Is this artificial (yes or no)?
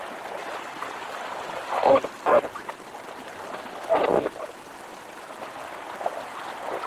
no